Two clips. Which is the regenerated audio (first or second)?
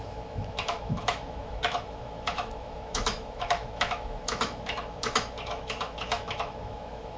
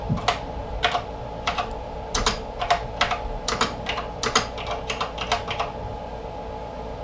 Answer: first